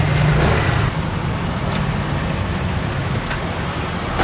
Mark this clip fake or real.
real